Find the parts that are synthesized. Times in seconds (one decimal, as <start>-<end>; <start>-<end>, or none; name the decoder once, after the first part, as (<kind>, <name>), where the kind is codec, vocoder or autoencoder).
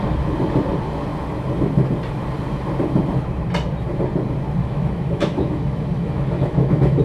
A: 4.6-7.0 (autoencoder, DAC-VAE)